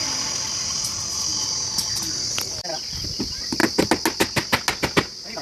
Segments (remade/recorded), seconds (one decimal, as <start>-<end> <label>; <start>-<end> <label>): 0.0-1.3 remade; 1.3-2.3 recorded; 2.3-3.6 remade; 3.6-5.4 recorded